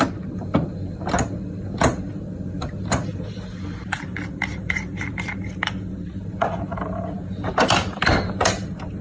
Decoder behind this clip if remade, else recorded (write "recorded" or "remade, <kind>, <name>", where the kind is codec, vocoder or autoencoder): remade, vocoder, BigVGAN v2